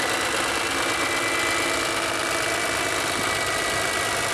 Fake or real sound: real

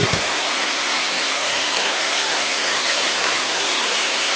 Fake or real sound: fake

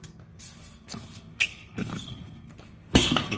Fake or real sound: fake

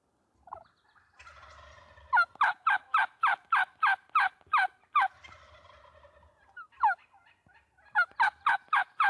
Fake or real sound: real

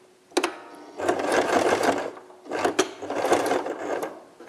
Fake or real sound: real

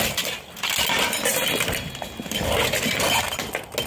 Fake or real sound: real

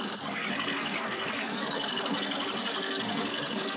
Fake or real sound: fake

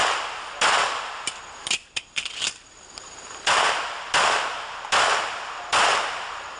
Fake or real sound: real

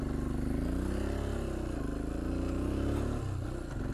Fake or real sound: real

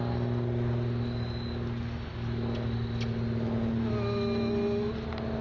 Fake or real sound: real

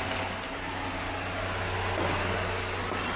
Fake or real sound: real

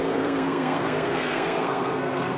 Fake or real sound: fake